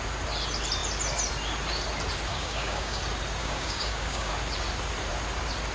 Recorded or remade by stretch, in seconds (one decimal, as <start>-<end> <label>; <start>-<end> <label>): 0.0-2.3 recorded; 2.3-3.0 remade; 3.0-3.4 recorded; 3.4-4.3 remade; 4.3-5.7 recorded